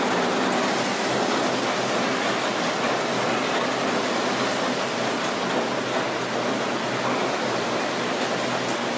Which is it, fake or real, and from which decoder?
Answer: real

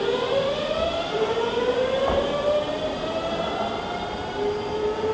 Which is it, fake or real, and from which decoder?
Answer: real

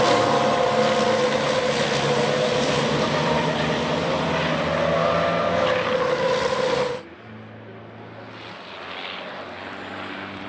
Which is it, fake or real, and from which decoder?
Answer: real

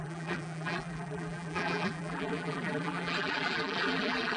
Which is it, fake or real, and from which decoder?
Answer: fake, vocoder, BigVGAN v2